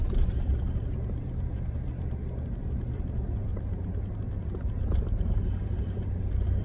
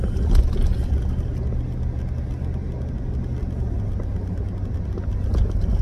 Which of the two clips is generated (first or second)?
first